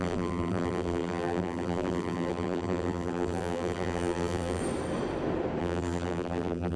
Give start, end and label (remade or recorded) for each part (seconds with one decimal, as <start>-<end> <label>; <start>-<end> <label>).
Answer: 0.0-4.6 remade; 4.6-5.6 recorded; 5.6-6.8 remade